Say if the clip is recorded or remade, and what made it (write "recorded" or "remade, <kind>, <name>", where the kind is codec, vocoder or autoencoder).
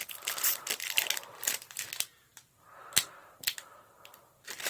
remade, vocoder, BigVGAN v2